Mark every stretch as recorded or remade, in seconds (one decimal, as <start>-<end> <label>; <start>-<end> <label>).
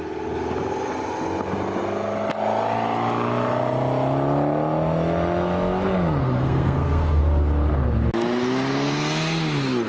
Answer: 0.0-6.2 recorded; 6.2-7.2 remade; 7.2-9.9 recorded